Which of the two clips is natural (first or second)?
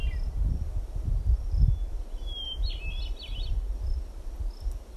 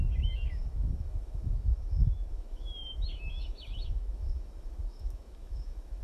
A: first